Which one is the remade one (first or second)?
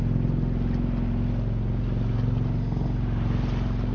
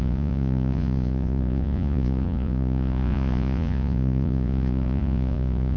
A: second